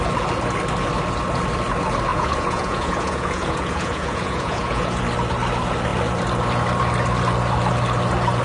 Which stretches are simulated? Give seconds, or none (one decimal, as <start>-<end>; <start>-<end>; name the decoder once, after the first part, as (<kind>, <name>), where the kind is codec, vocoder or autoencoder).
2.1-5.0 (vocoder, Vocos)